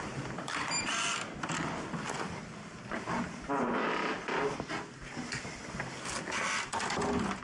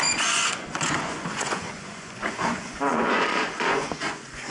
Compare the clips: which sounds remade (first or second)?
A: second